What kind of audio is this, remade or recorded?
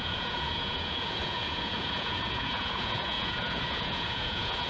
remade